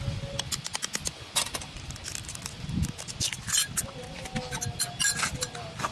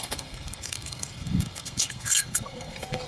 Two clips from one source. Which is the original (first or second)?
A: first